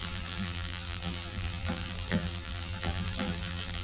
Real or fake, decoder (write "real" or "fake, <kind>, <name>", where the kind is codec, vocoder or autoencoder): fake, vocoder, BigVGAN v2